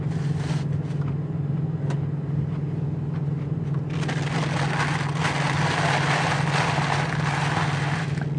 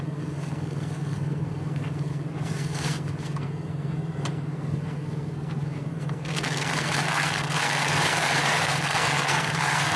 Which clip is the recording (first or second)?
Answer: first